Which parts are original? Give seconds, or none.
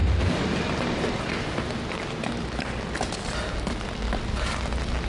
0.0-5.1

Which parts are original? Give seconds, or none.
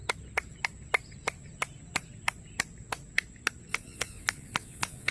0.0-3.7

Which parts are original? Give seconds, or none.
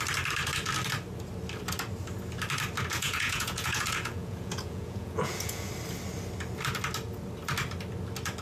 0.0-2.9; 5.7-8.4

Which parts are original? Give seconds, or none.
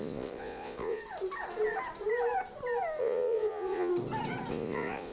1.0-3.0; 3.9-4.5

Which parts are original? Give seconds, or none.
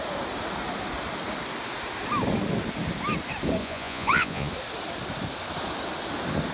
0.0-3.6; 4.5-6.5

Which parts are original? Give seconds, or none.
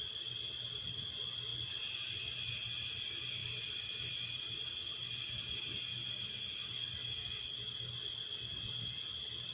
0.0-9.5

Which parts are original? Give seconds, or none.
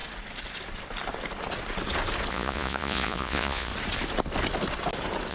0.0-2.3; 3.7-5.3